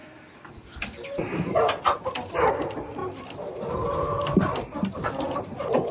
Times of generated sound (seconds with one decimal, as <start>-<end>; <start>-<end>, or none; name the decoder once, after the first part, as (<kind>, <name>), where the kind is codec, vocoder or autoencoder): none